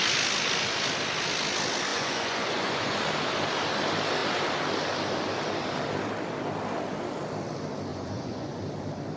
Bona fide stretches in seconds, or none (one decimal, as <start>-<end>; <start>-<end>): 0.0-1.9; 3.0-7.9; 8.6-9.2

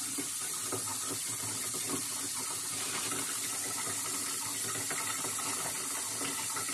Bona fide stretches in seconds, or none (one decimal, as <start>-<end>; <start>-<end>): 0.0-6.7

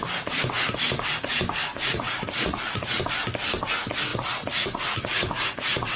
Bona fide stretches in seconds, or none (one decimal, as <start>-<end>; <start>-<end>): 0.0-1.7; 3.0-4.1

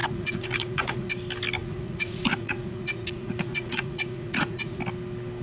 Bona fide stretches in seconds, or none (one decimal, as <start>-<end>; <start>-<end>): 1.1-1.6; 4.8-5.4